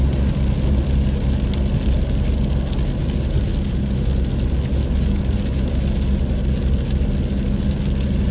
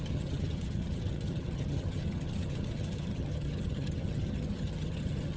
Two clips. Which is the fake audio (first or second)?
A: second